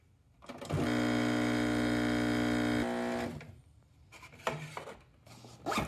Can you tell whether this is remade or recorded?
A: recorded